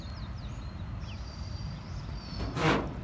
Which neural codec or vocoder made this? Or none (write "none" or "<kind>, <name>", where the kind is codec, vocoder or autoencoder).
none